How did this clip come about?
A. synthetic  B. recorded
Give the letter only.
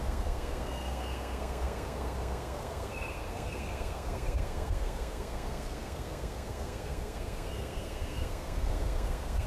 A